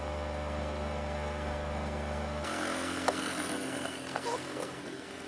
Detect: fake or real fake